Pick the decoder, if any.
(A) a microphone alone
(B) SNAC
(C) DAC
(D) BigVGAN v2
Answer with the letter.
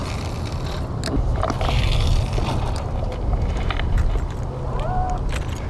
A